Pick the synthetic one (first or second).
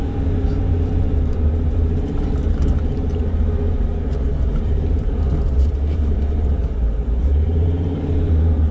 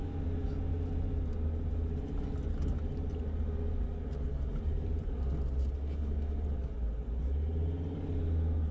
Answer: first